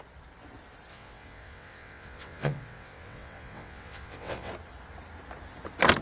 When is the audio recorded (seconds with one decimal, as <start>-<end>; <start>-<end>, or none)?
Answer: 0.0-0.9; 4.5-6.0